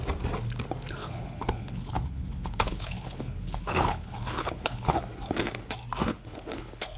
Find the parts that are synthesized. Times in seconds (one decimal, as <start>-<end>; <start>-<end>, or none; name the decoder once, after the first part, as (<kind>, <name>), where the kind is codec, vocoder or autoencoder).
1.0-5.0 (codec, HILCodec); 6.1-7.0